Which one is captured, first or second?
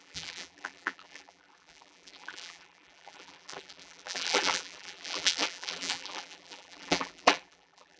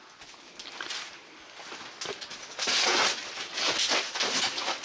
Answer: second